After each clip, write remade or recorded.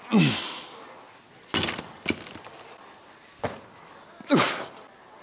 recorded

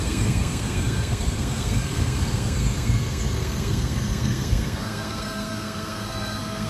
remade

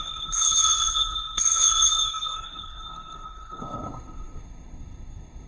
remade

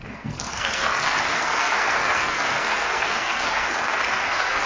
remade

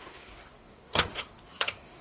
remade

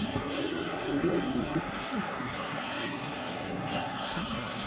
remade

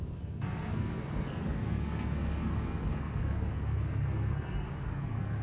remade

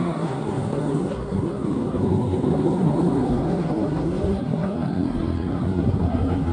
remade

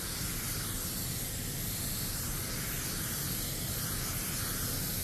recorded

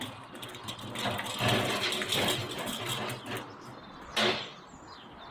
recorded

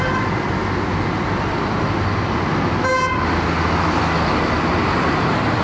recorded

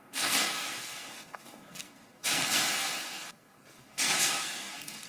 remade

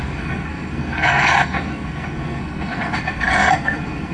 remade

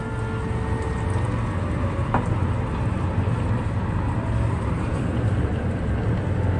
recorded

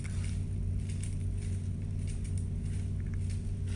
recorded